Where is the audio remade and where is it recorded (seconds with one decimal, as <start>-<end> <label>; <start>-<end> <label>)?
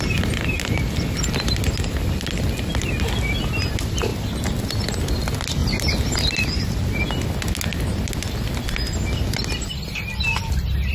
0.0-10.9 recorded